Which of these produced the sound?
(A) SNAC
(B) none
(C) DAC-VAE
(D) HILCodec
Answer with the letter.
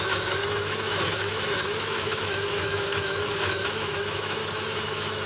C